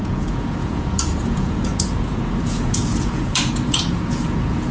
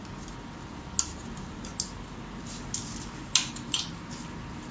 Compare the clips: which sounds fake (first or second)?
first